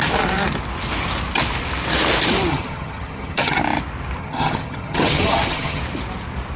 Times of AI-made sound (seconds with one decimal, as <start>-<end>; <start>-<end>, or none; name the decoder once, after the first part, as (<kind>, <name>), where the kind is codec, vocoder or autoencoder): 2.5-3.6 (vocoder, HiFi-GAN); 4.2-5.8